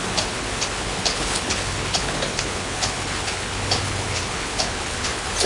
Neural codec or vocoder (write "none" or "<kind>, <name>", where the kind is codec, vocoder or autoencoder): codec, HILCodec